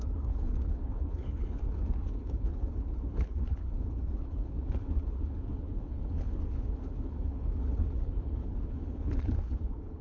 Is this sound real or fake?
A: fake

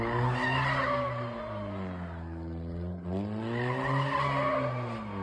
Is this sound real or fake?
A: real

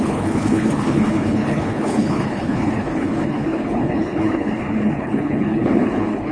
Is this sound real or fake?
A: fake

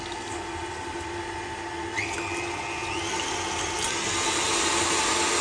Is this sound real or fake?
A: real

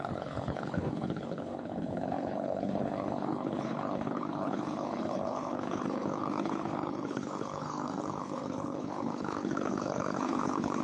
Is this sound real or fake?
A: fake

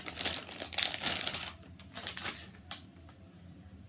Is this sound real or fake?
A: real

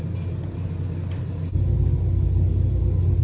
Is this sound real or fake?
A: real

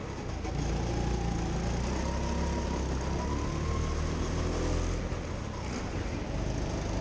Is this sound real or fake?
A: real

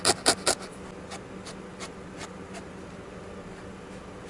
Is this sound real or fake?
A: real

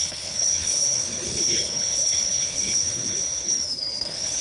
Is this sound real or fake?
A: fake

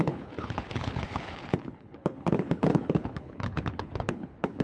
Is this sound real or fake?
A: fake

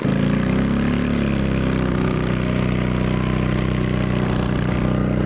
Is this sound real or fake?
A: real